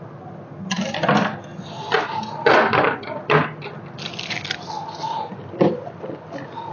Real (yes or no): yes